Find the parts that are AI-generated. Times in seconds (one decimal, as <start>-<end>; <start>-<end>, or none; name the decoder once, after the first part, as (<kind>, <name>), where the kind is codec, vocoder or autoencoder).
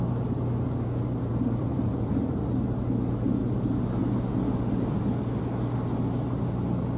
1.3-2.6 (vocoder, BigVGAN v2)